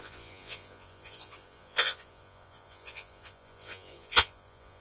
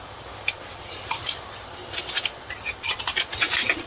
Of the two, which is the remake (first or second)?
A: first